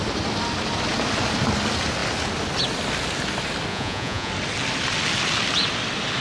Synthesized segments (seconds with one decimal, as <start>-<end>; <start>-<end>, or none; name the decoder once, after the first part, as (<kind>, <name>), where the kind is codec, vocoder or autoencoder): 3.7-4.3 (vocoder, Vocos)